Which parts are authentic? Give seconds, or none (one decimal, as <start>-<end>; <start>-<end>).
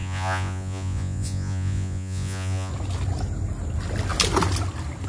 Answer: 2.7-5.1